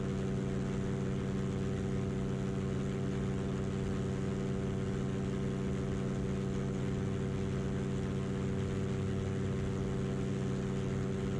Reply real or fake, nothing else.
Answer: real